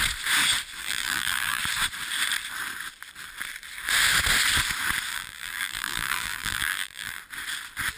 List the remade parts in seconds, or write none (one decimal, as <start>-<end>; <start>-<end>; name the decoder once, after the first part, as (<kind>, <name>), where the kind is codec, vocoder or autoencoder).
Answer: 0.8-1.6 (vocoder, BigVGAN v2); 5.1-7.2